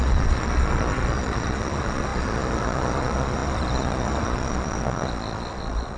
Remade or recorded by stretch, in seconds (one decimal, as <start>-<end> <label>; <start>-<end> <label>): 0.0-6.0 remade